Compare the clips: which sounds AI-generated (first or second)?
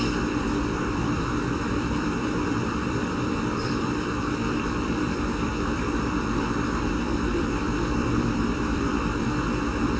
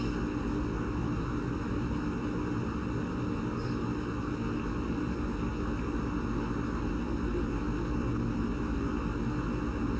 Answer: first